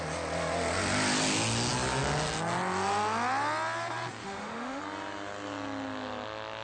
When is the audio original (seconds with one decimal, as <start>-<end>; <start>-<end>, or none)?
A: 0.0-4.2; 4.8-6.6